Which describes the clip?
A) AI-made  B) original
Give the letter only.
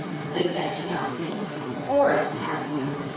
A